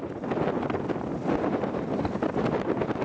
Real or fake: real